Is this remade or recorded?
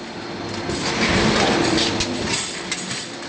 recorded